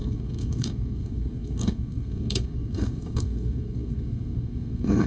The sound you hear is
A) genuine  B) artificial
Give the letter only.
B